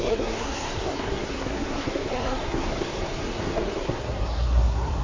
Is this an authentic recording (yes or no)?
no